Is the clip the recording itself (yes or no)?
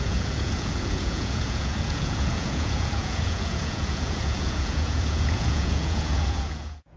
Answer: no